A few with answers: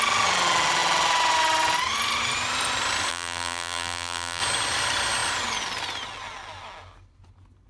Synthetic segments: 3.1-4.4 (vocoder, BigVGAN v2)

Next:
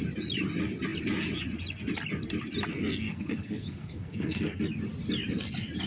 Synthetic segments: 2.7-4.6 (codec, SNAC)

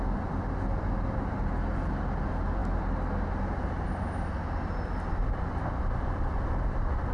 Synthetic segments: none

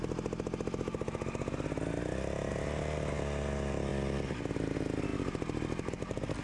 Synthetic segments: 3.9-4.4 (vocoder, BigVGAN v2); 5.1-5.9

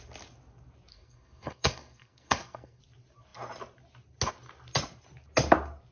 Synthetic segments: 0.9-2.8 (codec, SNAC)

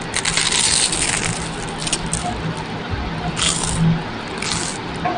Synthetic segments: none

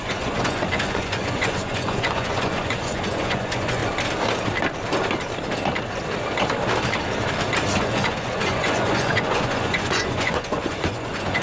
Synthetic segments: 0.0-3.8 (vocoder, Vocos); 7.8-11.4